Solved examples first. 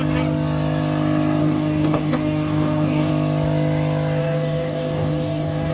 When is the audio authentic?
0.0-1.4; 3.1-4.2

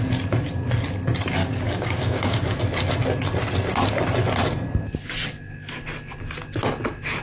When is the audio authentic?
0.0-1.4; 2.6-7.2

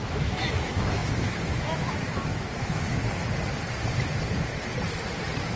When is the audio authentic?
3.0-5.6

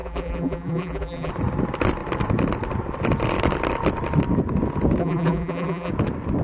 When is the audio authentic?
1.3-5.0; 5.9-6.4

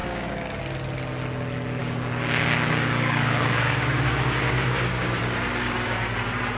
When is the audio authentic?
0.6-1.8; 5.2-6.6